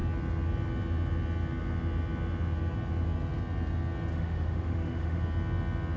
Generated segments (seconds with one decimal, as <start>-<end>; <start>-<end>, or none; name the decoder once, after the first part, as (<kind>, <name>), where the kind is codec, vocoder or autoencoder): 4.1-5.2 (autoencoder, DAC-VAE)